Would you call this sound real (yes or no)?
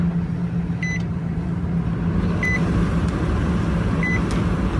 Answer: yes